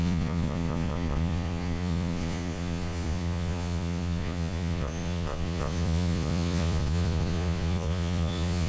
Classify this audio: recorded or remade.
remade